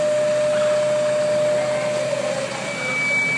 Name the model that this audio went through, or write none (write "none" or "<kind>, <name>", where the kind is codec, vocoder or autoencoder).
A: none